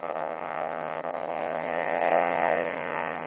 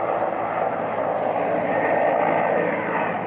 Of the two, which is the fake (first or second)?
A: first